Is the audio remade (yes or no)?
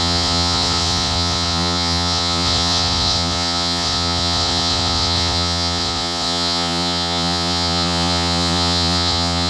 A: yes